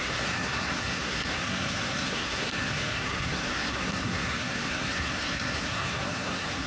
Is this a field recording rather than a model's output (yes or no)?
no